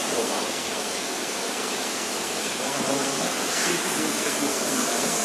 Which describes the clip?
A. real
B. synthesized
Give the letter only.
B